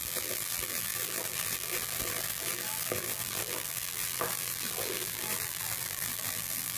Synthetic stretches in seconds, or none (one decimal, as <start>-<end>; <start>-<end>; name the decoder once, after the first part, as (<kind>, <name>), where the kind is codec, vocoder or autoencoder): 0.0-6.8 (vocoder, BigVGAN v2)